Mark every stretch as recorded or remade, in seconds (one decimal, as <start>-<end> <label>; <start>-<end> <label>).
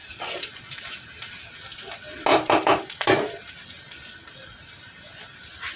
0.0-0.6 remade; 0.6-2.3 recorded; 2.3-3.5 remade; 3.5-5.8 recorded